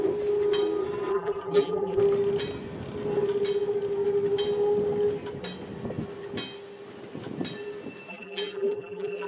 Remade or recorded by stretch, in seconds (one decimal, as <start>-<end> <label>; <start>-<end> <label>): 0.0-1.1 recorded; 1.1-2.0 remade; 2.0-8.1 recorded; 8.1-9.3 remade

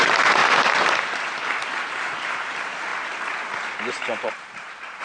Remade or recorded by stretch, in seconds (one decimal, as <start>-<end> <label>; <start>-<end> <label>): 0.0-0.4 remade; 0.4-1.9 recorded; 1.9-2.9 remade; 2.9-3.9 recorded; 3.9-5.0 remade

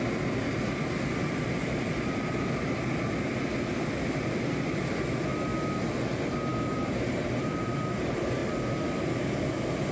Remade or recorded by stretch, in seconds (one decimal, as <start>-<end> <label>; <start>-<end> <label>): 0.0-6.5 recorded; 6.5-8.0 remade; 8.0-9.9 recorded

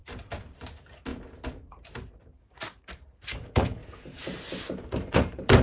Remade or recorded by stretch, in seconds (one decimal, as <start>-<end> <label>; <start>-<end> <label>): 0.0-1.1 remade; 1.1-1.8 recorded; 1.8-3.8 remade; 3.8-5.1 recorded; 5.1-5.6 remade

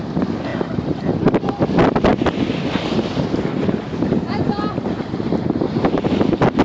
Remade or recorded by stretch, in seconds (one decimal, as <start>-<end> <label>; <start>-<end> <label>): 0.0-0.5 recorded; 0.5-1.5 remade; 1.5-2.1 recorded; 2.1-6.1 remade; 6.1-6.6 recorded

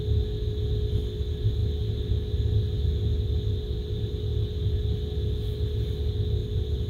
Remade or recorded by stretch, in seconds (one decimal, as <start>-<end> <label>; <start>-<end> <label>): 0.0-6.4 recorded; 6.4-6.9 remade

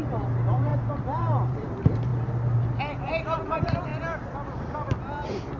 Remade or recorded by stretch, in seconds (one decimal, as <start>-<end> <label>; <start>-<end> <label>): 0.0-2.1 remade; 2.1-3.4 recorded; 3.4-3.9 remade; 3.9-5.6 recorded

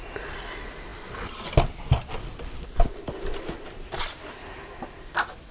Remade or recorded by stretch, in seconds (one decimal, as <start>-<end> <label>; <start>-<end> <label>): 0.0-5.5 recorded